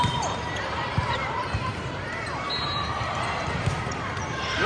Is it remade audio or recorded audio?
remade